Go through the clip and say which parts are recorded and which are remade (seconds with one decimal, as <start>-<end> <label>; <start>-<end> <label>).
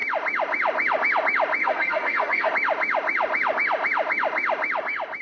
0.0-1.6 recorded; 1.6-2.5 remade; 2.5-5.2 recorded